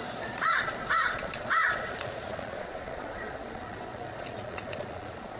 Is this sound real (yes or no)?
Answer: no